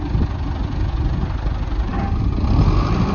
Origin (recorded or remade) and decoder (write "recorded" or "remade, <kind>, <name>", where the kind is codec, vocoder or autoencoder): recorded